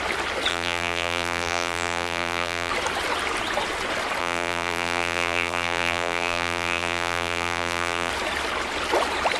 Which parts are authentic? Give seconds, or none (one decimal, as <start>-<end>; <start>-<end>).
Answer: 0.0-0.5; 2.7-4.2; 8.1-9.4